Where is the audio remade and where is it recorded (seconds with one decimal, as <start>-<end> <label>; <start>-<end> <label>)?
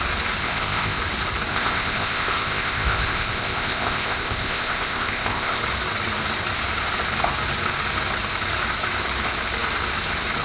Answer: 0.0-0.4 recorded; 0.4-1.0 remade; 1.0-1.5 recorded; 1.5-5.6 remade; 5.6-10.4 recorded